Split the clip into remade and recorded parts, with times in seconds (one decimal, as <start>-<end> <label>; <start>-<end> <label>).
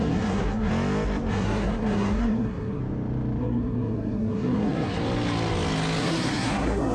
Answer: 0.0-0.7 remade; 0.7-1.3 recorded; 1.3-2.8 remade; 2.8-3.4 recorded; 3.4-5.0 remade; 5.0-6.0 recorded; 6.0-6.9 remade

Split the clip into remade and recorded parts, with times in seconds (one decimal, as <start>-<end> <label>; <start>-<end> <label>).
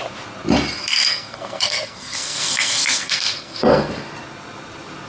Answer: 0.0-0.8 recorded; 0.8-3.9 remade; 3.9-5.1 recorded